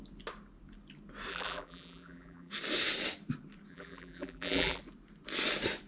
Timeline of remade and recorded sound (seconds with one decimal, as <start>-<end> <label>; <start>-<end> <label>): 0.0-1.3 recorded; 1.3-2.5 remade; 2.5-3.7 recorded; 3.7-4.8 remade; 4.8-5.9 recorded